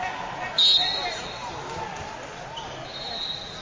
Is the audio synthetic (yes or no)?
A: no